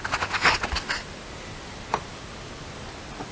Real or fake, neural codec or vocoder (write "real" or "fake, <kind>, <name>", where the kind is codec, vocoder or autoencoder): real